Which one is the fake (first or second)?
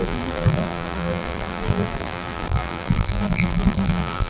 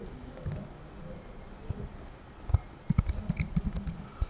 first